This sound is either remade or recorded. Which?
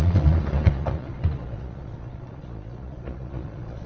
remade